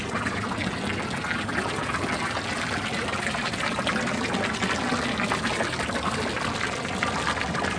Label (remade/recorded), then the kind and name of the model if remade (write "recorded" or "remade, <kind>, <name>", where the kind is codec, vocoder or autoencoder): recorded